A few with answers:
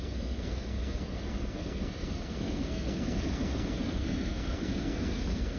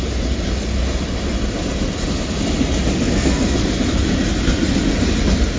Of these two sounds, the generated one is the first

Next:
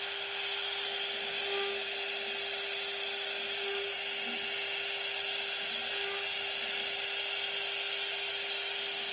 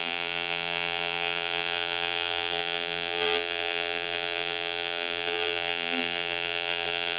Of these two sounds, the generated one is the second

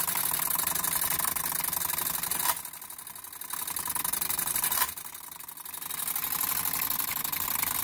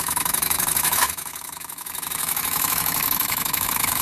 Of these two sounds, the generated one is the second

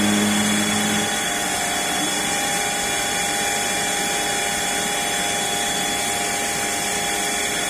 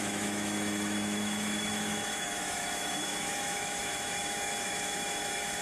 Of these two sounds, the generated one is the second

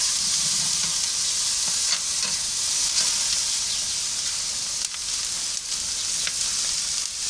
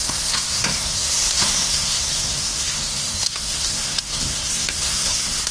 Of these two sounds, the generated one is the second